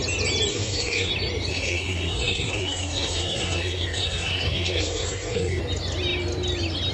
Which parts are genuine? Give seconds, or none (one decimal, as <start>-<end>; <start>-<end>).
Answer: 0.0-0.5; 1.1-1.5; 5.6-6.9